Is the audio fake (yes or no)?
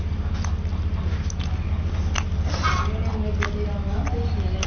no